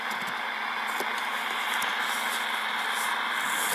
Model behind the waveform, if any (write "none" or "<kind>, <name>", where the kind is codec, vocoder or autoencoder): none